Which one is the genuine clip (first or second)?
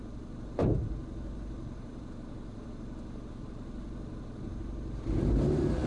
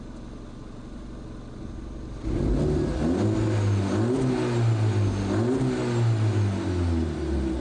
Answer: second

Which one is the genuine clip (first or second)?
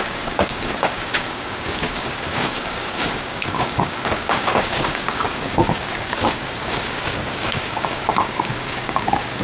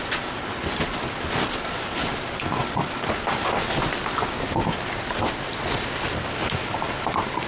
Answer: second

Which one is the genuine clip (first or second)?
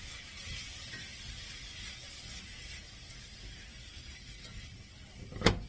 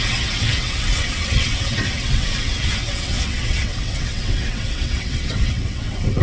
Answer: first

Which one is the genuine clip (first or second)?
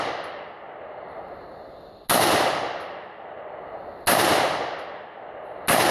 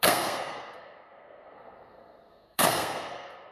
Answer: first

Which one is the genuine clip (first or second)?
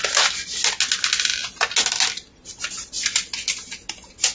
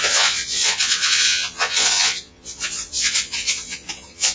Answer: first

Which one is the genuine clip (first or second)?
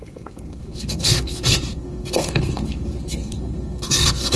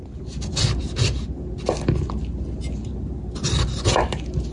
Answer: second